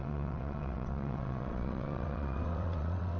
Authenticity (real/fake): fake